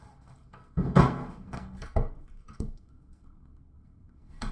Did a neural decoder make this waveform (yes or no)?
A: yes